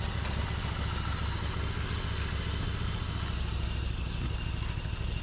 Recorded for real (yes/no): yes